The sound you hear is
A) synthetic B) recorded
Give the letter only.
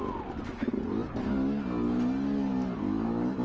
B